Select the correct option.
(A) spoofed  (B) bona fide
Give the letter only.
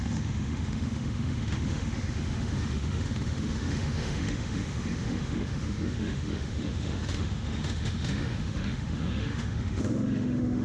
A